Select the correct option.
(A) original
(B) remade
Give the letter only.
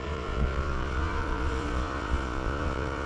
B